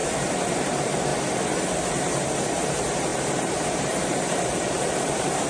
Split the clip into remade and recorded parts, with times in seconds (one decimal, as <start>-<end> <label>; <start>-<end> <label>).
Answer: 0.0-1.1 remade; 1.1-1.9 recorded; 1.9-5.5 remade